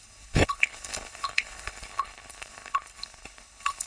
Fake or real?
fake